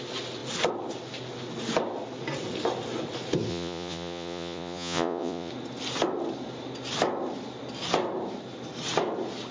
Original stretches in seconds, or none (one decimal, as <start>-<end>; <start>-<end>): 0.0-3.5; 5.5-9.5

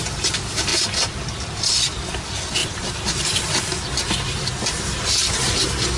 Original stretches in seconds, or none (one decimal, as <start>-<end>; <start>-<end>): 2.6-4.4

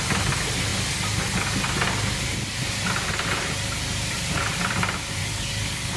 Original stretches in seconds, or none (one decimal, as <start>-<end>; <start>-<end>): 0.0-5.2

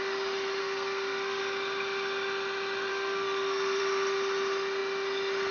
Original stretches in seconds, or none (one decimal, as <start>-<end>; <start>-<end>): 0.0-0.6; 1.4-2.9; 3.8-5.5

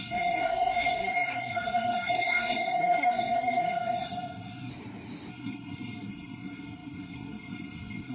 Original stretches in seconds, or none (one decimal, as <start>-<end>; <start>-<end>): 4.7-5.3

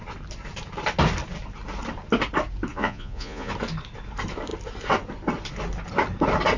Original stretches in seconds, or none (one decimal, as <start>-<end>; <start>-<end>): 0.0-2.7; 3.5-6.6

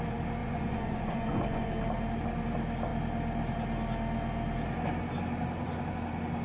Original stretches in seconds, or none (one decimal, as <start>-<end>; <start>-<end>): 0.0-0.4; 1.7-6.4

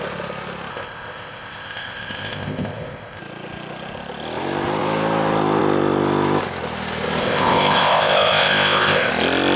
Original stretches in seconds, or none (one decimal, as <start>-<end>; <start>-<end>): 0.0-0.7; 3.2-7.2; 9.1-9.6